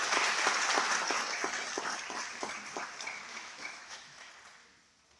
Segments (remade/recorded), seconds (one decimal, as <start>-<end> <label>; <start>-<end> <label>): 0.0-3.3 recorded; 3.3-4.3 remade; 4.3-5.2 recorded